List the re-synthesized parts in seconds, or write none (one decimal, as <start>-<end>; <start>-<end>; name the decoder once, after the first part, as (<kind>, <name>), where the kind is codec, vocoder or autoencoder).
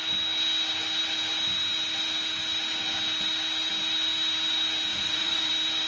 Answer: 4.9-5.5 (vocoder, Vocos)